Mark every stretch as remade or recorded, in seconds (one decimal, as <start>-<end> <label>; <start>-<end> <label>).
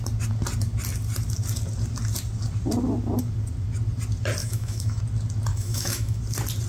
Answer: 0.0-4.4 recorded; 4.4-5.0 remade; 5.0-5.5 recorded; 5.5-6.2 remade; 6.2-6.7 recorded